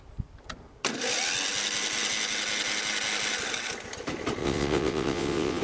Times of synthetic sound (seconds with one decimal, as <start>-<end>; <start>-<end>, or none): 4.4-5.6